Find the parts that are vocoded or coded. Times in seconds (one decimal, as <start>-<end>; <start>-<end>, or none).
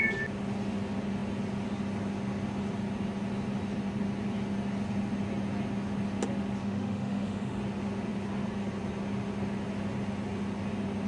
6.6-7.6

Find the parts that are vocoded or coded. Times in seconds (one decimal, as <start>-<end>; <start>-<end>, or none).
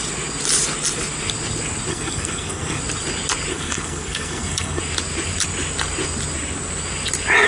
1.9-2.8; 3.5-4.8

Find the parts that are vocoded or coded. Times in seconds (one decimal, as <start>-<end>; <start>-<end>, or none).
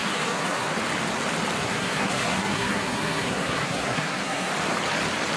0.0-0.7; 1.6-4.5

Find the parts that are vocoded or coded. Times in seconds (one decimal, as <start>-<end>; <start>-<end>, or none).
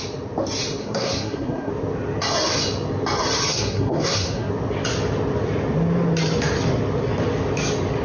0.8-1.7; 3.5-4.5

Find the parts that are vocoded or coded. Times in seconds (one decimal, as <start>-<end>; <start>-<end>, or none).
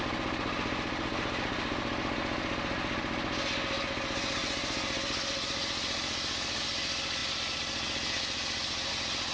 none